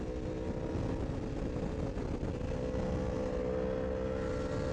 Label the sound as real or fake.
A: real